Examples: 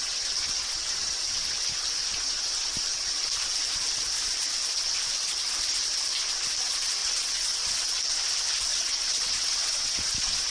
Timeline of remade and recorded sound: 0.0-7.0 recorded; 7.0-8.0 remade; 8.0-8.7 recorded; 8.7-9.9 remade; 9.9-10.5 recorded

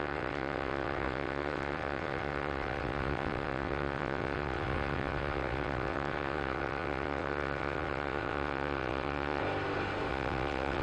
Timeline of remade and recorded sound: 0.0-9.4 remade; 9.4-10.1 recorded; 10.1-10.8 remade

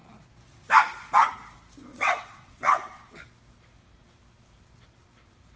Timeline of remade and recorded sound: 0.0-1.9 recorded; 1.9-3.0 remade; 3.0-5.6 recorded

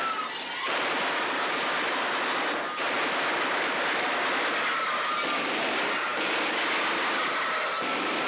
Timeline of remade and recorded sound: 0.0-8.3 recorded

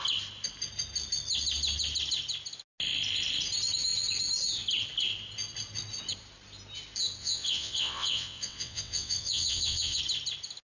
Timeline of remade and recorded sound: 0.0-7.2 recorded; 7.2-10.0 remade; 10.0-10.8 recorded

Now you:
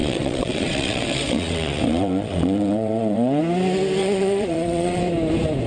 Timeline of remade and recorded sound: 0.0-3.4 remade; 3.4-4.0 recorded; 4.0-5.0 remade; 5.0-5.7 recorded

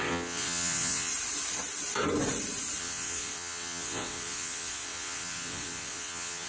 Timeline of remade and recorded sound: 0.0-1.1 remade; 1.1-2.8 recorded; 2.8-6.5 remade

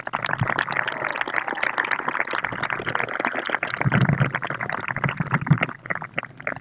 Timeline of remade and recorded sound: 0.0-6.6 recorded